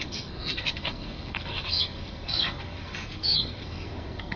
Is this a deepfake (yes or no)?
yes